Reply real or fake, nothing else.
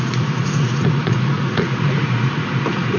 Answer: fake